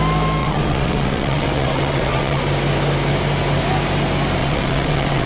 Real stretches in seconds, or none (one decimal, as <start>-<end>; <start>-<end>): 0.0-0.4; 2.4-4.4